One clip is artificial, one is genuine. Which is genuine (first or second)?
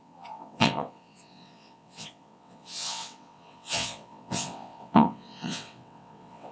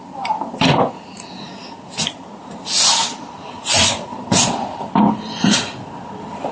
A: second